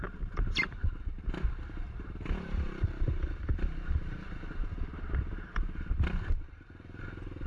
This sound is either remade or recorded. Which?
remade